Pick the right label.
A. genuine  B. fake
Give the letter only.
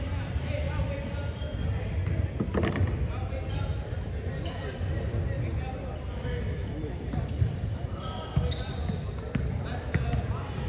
A